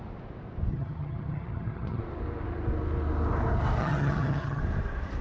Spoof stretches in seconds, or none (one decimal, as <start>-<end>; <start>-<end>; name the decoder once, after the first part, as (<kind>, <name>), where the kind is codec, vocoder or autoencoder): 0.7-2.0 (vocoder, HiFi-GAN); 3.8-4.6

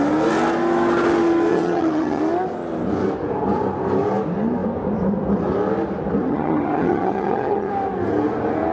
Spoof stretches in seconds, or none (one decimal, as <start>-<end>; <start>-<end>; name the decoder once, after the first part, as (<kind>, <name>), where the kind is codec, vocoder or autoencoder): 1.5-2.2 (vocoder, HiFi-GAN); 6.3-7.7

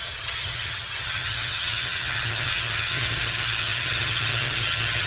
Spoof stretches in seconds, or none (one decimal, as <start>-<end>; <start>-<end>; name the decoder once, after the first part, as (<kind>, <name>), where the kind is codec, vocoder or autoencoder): 0.0-5.1 (vocoder, HiFi-GAN)

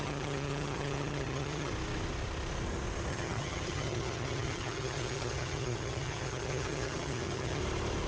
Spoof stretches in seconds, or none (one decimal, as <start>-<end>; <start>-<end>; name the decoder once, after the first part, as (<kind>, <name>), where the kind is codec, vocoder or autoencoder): 0.0-1.7 (vocoder, HiFi-GAN); 3.1-7.6

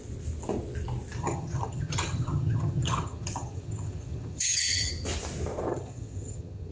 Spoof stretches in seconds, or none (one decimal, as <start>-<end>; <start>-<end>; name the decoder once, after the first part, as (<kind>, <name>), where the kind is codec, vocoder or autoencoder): 1.2-4.9 (vocoder, HiFi-GAN); 5.7-6.7

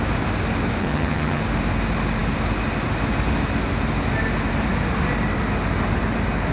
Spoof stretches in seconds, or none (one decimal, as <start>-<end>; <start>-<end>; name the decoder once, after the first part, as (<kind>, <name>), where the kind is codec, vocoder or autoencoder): 0.8-1.4 (vocoder, HiFi-GAN)